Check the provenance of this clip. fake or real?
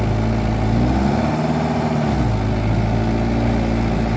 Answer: real